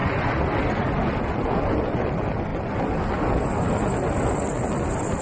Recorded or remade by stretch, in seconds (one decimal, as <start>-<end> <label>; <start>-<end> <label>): 0.0-5.2 recorded